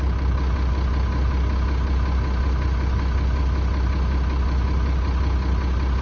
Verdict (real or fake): real